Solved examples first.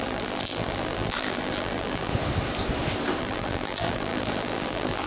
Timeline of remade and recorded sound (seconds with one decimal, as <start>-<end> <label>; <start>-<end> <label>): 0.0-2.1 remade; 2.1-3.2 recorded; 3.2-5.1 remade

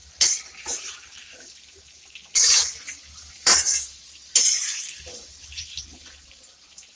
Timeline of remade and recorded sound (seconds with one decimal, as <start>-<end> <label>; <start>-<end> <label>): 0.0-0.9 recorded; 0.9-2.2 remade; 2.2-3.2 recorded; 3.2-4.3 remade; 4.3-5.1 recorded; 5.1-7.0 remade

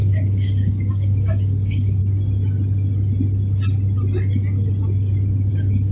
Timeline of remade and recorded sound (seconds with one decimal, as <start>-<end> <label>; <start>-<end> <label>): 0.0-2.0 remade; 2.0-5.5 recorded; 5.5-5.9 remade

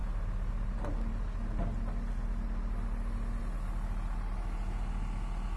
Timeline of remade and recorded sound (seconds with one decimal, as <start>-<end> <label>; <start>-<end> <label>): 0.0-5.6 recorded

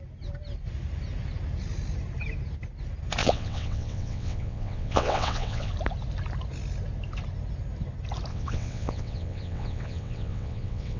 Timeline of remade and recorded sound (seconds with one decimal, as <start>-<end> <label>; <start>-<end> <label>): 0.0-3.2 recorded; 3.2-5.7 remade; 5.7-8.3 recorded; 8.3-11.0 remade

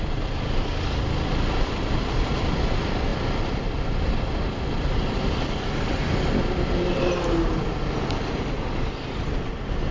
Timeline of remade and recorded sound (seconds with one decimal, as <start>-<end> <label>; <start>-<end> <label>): 0.0-9.9 recorded

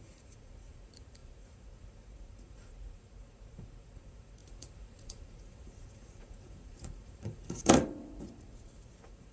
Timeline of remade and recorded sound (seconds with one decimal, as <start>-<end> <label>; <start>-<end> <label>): 0.0-9.3 remade